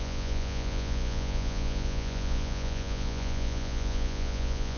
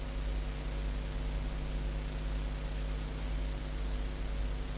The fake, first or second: first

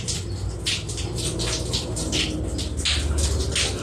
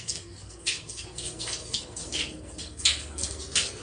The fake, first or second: second